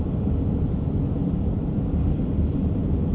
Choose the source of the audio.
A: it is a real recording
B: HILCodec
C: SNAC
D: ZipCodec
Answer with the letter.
A